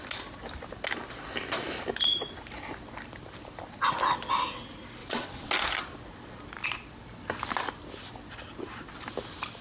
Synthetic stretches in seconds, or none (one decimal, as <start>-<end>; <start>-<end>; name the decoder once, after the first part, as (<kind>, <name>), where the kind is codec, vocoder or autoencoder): 5.0-5.5 (vocoder, WaveNeXt)

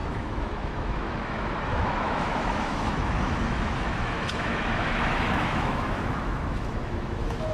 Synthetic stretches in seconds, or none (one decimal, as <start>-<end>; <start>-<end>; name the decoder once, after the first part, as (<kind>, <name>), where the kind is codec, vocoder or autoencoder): 0.0-7.5 (autoencoder, DAC-VAE)